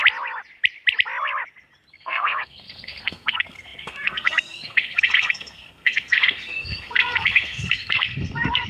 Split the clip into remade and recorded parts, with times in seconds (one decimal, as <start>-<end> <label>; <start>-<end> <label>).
0.0-1.9 recorded; 1.9-8.7 remade